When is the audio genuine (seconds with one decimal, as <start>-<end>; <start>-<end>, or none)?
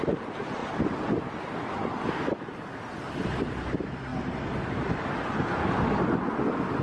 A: 0.6-2.7; 4.1-6.8